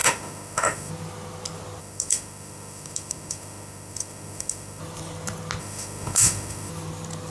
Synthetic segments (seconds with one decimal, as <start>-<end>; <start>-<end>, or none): 0.0-0.9; 1.8-4.8; 5.6-6.7